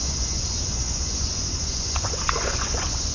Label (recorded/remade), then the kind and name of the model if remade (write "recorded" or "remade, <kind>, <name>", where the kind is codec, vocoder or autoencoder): remade, vocoder, Vocos